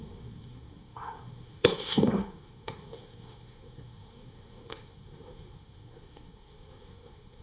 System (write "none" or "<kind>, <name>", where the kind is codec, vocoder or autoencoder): codec, SNAC